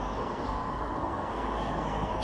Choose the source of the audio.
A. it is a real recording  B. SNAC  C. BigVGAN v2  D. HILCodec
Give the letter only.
B